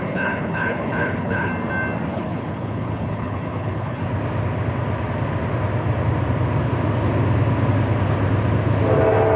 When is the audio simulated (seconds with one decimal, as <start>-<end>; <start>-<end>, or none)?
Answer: 0.0-1.5; 2.1-4.0